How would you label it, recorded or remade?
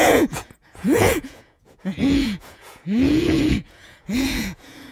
remade